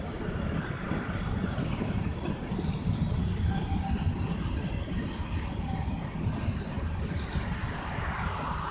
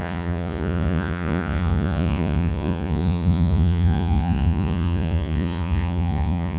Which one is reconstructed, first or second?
second